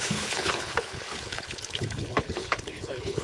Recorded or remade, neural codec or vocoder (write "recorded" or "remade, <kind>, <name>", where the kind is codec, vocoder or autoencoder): remade, codec, HILCodec